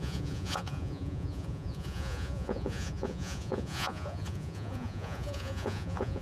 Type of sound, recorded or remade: remade